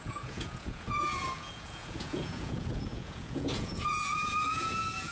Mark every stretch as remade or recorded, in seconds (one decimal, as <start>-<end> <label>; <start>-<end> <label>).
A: 0.0-5.1 remade